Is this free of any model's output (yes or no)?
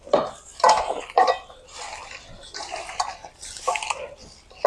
no